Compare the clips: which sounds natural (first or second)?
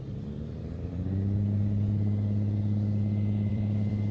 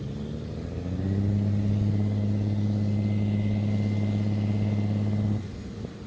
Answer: second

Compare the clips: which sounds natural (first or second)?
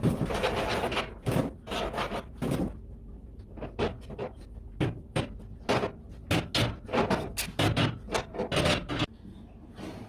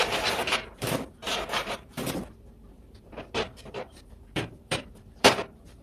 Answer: first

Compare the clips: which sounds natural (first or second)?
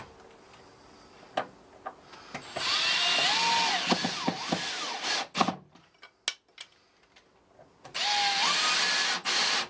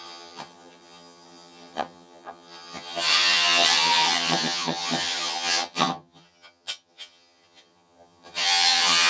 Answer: first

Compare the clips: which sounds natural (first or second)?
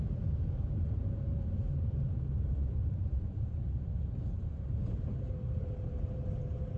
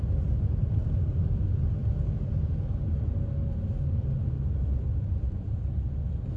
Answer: second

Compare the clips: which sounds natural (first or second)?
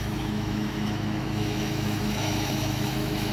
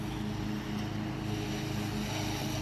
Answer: second